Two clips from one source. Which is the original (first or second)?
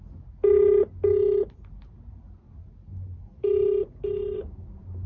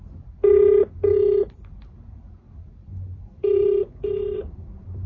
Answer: first